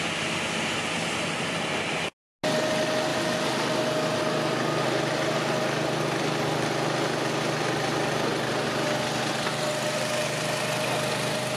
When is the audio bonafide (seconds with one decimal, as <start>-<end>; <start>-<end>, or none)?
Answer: 0.0-11.6